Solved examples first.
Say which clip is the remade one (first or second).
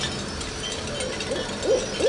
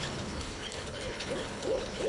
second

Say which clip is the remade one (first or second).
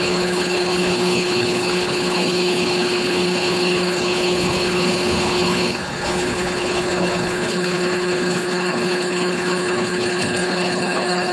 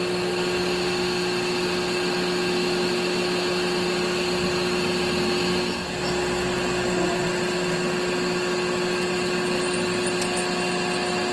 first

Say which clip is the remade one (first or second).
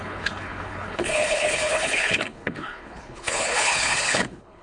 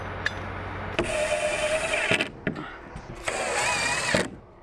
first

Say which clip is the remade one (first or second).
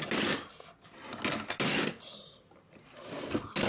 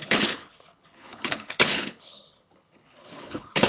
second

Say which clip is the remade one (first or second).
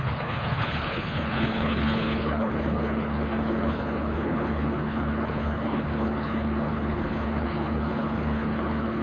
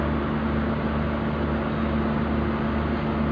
first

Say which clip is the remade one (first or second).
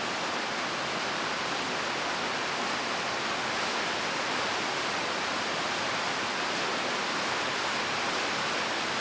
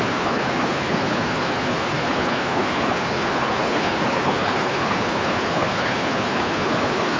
second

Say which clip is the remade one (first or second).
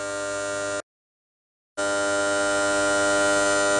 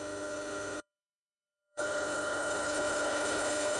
second